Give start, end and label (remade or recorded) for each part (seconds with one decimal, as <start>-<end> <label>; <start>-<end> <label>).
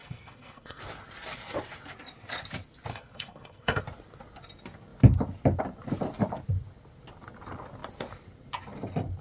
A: 0.0-0.8 remade; 0.8-2.9 recorded; 2.9-3.8 remade; 3.8-9.2 recorded